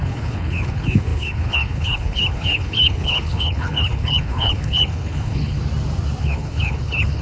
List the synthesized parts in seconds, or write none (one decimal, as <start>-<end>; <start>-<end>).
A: 0.0-5.6; 6.2-7.2